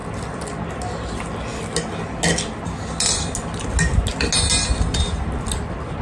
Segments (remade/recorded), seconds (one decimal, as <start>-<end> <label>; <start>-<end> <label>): 0.0-6.0 recorded